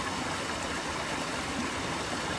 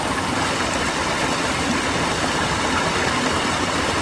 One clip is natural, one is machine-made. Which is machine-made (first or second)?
first